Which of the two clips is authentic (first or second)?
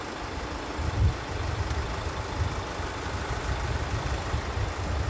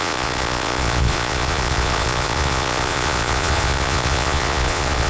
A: first